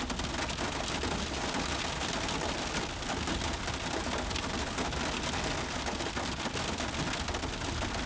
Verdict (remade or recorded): recorded